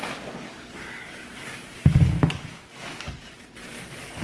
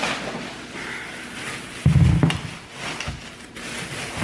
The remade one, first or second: first